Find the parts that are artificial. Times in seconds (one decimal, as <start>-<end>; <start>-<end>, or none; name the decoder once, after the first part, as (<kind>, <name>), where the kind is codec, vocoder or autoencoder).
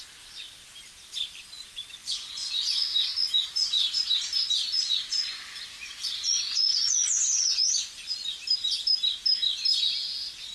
2.0-3.8 (vocoder, Vocos); 4.4-5.6; 6.2-8.4